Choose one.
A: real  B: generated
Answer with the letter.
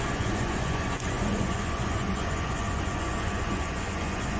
B